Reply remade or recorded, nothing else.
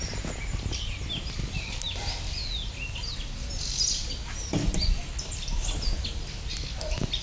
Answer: recorded